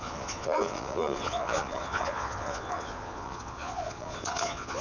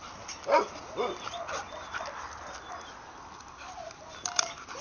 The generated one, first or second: first